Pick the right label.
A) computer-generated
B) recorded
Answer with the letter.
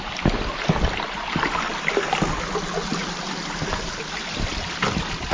B